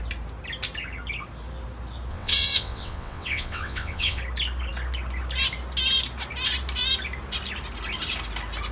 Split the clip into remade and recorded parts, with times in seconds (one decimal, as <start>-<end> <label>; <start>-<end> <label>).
0.0-2.1 recorded; 2.1-4.2 remade; 4.2-8.7 recorded